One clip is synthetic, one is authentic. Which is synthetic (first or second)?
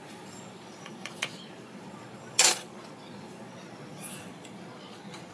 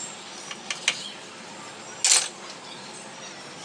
first